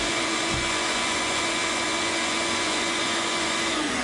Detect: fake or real fake